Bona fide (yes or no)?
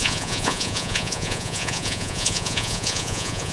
no